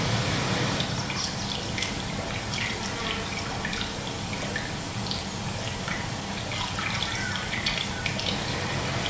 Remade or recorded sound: recorded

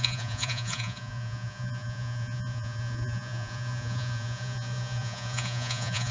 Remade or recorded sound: remade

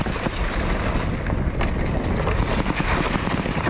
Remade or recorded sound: recorded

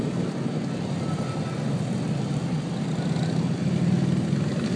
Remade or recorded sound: recorded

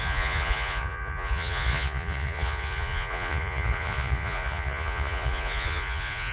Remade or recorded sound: remade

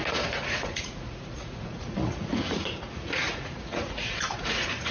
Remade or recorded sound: remade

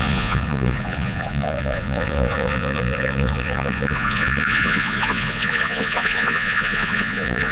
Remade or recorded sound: remade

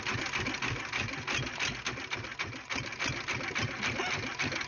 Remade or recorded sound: recorded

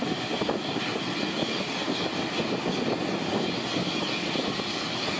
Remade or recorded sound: recorded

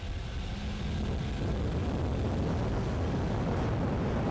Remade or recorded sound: recorded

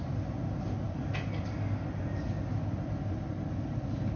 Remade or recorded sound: recorded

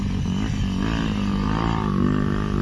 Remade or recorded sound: recorded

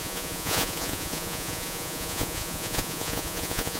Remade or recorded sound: remade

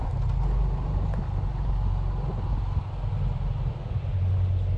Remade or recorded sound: recorded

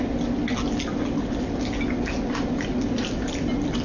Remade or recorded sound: recorded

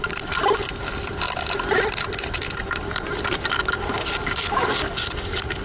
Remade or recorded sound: recorded